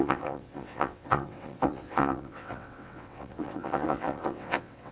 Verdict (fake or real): fake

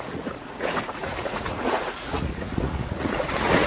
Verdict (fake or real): fake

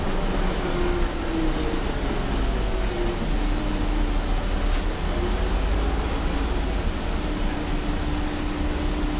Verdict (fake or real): real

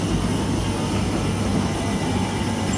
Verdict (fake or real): real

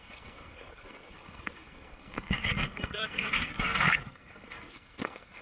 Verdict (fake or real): fake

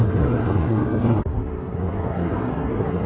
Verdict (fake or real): fake